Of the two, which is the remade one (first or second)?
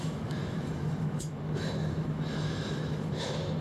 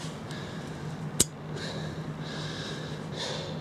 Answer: first